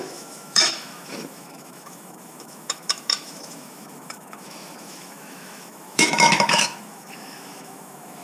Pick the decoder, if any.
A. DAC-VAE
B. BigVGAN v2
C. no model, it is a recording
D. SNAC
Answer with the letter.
A